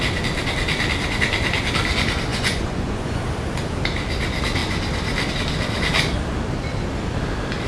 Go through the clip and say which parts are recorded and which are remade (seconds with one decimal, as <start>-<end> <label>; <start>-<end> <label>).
0.0-2.3 recorded; 2.3-3.2 remade; 3.2-7.7 recorded